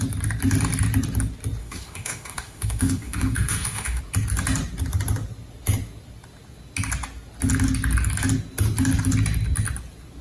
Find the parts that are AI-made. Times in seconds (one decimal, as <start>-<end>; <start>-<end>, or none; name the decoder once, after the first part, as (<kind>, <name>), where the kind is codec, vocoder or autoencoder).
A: 1.6-4.0 (autoencoder, DAC-VAE)